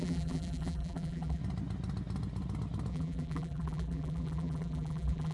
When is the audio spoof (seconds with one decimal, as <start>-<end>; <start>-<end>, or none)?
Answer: 0.0-1.4; 2.9-5.3